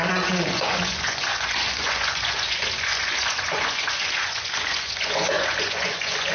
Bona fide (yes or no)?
no